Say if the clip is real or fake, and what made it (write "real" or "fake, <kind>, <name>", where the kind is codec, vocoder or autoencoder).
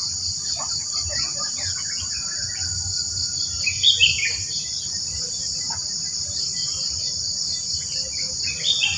real